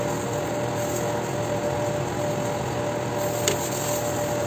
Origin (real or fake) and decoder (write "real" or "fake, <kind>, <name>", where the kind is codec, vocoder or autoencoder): real